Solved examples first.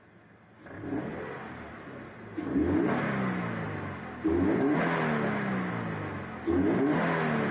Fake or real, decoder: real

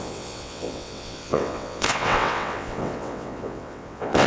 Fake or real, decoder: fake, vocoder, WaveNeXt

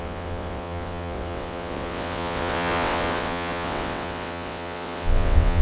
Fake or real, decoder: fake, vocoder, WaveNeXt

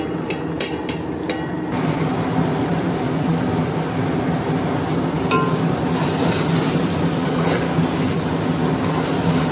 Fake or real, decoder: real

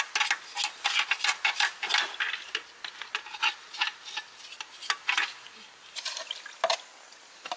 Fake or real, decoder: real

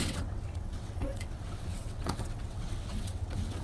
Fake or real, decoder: fake, vocoder, WaveNeXt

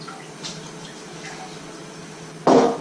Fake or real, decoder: real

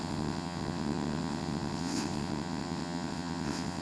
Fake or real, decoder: fake, vocoder, WaveNeXt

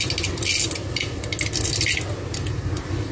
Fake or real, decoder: real